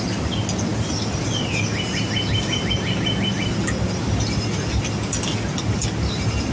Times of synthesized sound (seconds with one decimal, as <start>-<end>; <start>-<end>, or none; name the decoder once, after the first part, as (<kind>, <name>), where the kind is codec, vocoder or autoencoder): none